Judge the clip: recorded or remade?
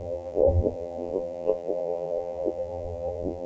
remade